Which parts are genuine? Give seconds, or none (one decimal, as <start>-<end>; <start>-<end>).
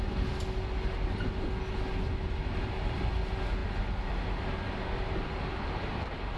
0.0-6.4